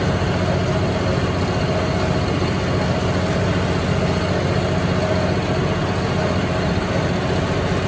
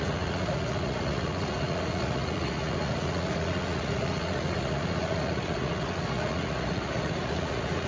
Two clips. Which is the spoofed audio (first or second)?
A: second